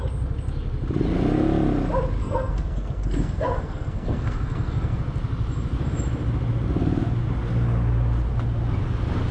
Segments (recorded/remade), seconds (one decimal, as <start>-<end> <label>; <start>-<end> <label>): 0.0-2.2 recorded; 2.2-5.0 remade; 5.0-9.3 recorded